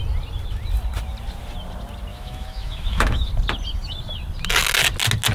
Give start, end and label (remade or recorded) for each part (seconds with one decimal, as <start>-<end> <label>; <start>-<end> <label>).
0.0-2.1 recorded; 2.1-3.3 remade; 3.3-5.3 recorded